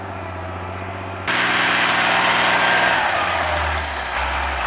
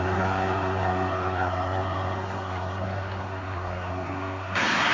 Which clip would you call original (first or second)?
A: first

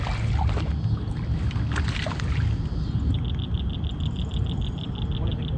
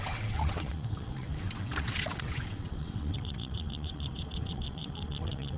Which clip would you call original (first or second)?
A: first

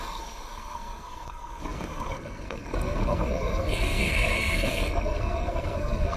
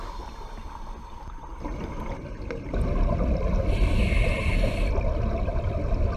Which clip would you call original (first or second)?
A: second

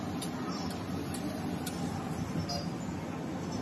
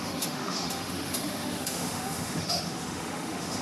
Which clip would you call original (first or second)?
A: first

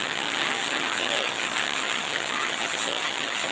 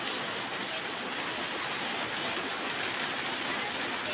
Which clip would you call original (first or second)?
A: second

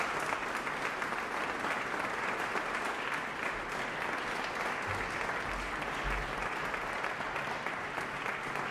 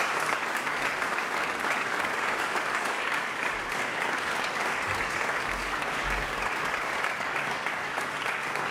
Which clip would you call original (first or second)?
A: first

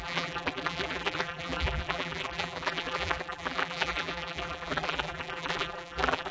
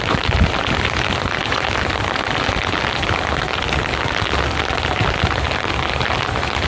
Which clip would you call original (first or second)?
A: second